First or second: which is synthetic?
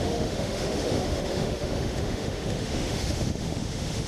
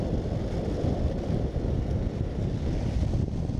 first